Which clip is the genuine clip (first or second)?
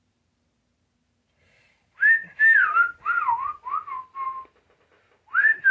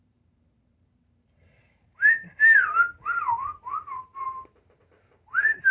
first